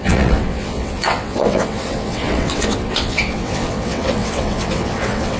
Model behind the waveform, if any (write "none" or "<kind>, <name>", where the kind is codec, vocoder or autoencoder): vocoder, WaveNeXt